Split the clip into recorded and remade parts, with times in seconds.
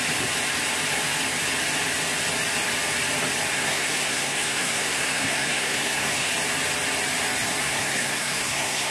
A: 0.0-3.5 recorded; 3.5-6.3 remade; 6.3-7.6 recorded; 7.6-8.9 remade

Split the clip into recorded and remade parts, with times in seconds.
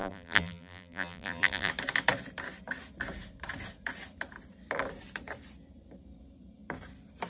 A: 0.0-1.7 remade; 1.7-7.3 recorded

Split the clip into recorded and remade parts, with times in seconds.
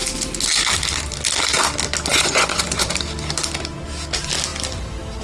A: 0.0-2.1 recorded; 2.1-2.9 remade; 2.9-5.2 recorded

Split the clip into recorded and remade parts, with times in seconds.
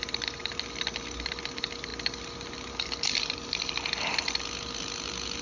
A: 0.0-5.4 recorded